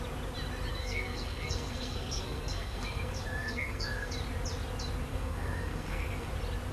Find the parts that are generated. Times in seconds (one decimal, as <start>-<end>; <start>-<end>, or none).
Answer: 0.7-4.1; 5.1-6.3